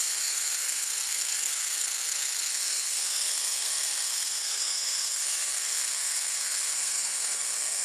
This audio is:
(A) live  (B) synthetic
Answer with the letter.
B